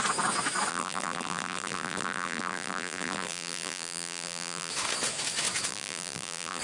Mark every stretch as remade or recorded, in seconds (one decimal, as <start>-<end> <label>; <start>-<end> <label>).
0.0-0.7 recorded; 0.7-4.7 remade; 4.7-5.7 recorded; 5.7-6.6 remade